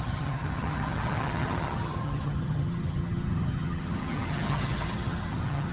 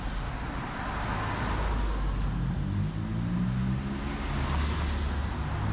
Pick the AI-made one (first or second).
first